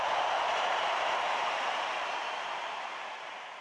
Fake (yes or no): yes